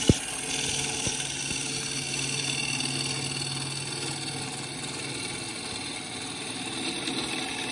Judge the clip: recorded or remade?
recorded